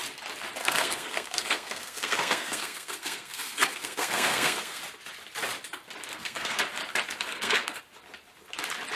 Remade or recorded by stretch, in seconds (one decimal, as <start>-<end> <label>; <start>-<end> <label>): 0.0-0.6 recorded; 0.6-4.8 remade; 4.8-6.1 recorded; 6.1-6.6 remade; 6.6-7.3 recorded; 7.3-7.8 remade; 7.8-9.0 recorded